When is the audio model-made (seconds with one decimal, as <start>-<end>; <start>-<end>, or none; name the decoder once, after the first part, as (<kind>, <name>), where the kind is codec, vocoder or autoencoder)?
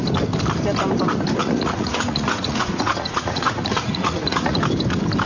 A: 1.4-4.6 (vocoder, Vocos)